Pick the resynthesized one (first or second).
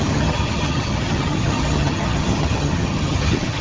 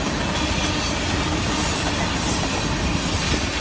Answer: first